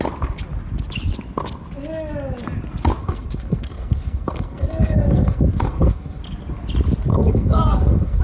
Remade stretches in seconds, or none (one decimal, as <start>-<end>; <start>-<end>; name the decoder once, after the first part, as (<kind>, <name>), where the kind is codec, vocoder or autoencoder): 3.0-6.2 (codec, SNAC); 7.1-8.2